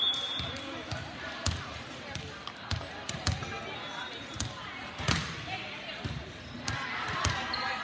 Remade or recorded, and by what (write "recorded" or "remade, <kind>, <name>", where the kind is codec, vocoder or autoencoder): recorded